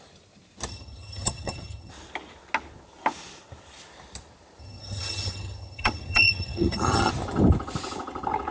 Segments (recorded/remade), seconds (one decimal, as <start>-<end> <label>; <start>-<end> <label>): 0.0-0.7 recorded; 0.7-1.9 remade; 1.9-4.6 recorded; 4.6-7.1 remade; 7.1-8.5 recorded